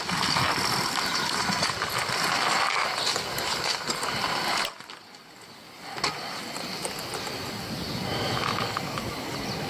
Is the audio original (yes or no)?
yes